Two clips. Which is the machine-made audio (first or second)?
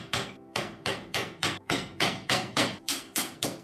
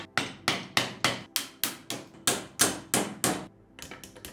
first